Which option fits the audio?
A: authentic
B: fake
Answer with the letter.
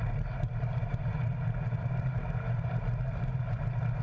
B